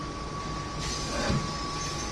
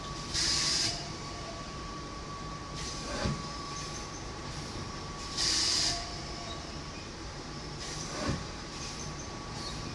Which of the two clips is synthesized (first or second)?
second